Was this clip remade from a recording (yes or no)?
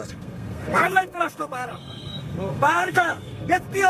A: yes